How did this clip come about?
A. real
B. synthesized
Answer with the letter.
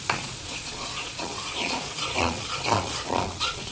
B